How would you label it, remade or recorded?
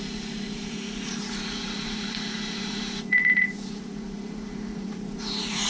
remade